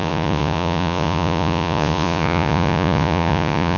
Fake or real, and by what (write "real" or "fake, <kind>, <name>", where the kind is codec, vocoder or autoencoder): fake, vocoder, Vocos